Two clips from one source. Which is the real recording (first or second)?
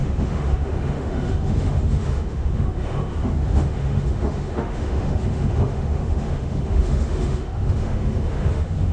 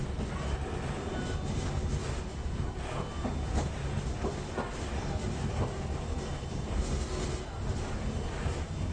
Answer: second